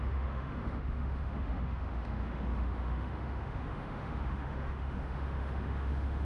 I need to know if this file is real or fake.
fake